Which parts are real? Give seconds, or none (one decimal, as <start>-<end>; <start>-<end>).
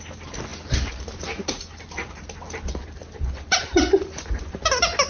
0.0-5.1